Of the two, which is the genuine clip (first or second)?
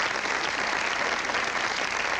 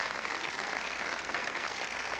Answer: first